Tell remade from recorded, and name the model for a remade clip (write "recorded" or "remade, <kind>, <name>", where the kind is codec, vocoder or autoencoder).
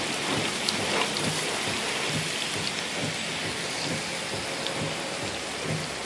recorded